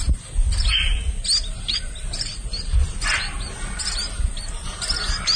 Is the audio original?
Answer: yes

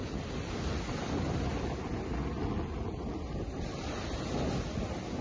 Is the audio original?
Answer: yes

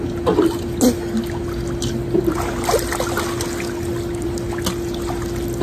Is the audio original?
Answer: yes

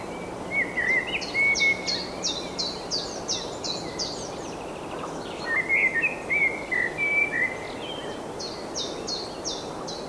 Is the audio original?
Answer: yes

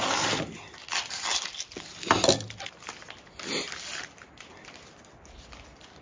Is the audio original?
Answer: yes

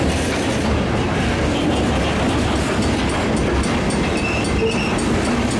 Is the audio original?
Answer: yes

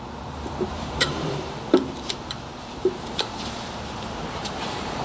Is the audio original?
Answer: no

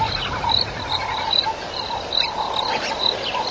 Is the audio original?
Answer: yes